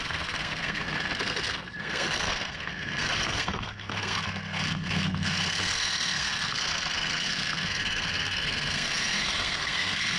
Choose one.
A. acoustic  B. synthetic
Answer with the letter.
B